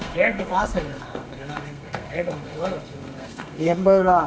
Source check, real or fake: fake